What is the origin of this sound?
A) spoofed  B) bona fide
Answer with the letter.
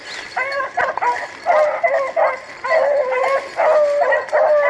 B